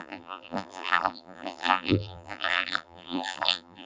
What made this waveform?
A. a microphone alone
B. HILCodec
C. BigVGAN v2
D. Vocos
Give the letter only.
C